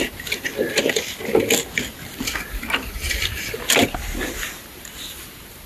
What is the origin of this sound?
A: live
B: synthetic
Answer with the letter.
A